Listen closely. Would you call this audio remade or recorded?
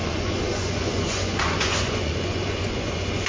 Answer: remade